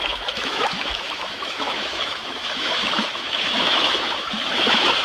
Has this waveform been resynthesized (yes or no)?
yes